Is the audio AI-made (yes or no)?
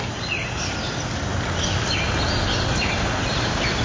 no